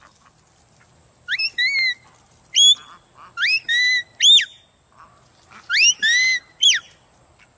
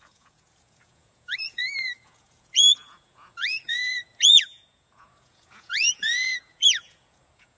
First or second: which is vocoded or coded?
second